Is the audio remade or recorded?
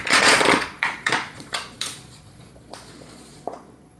remade